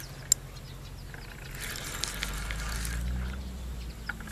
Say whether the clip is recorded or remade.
recorded